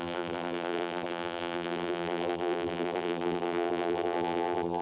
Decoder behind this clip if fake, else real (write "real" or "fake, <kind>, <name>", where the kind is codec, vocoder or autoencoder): fake, vocoder, BigVGAN v2